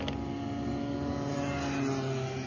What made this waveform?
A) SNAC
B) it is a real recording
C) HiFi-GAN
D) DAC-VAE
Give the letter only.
B